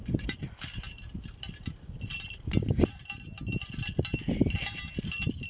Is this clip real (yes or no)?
yes